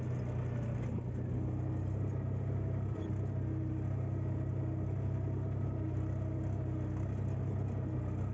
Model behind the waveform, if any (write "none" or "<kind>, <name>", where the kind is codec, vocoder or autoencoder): none